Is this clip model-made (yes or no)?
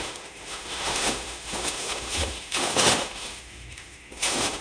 yes